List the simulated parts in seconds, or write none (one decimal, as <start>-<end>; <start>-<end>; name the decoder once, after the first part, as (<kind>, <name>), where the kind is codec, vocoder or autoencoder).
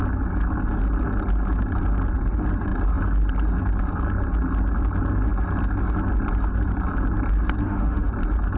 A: 7.6-8.1 (autoencoder, DAC-VAE)